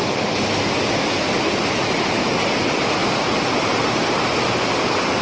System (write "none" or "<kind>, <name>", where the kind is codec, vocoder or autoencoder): none